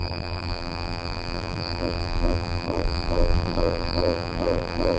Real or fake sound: fake